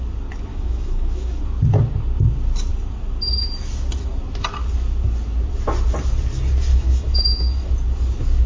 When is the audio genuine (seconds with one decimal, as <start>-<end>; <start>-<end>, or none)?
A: 0.0-0.5; 1.4-6.7; 7.7-8.5